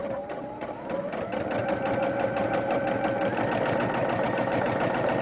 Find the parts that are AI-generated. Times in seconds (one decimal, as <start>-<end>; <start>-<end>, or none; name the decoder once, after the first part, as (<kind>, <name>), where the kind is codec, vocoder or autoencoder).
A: 0.0-1.2 (vocoder, BigVGAN v2); 1.6-2.8; 4.0-5.2